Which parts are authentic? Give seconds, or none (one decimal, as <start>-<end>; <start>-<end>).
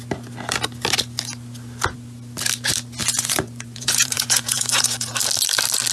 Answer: 0.0-3.0; 5.1-5.9